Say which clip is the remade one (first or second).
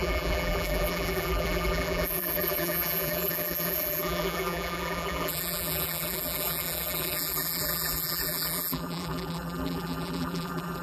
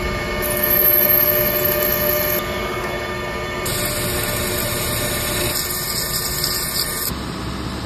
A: first